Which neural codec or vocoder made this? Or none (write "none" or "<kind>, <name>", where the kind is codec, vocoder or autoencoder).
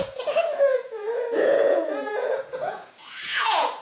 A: vocoder, Vocos